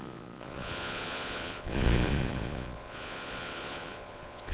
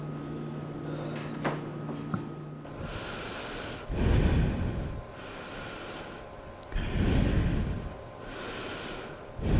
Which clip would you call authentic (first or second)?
second